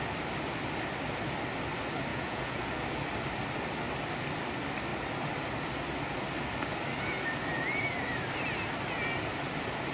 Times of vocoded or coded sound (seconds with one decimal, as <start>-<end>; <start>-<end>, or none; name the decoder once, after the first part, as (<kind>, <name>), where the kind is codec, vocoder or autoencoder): 2.1-2.6 (vocoder, Vocos)